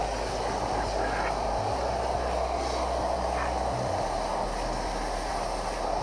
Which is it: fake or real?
real